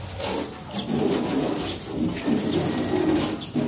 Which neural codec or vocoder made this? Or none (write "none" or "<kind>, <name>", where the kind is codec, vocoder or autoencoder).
none